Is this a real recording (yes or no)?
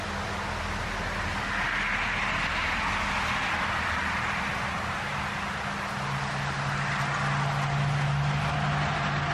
yes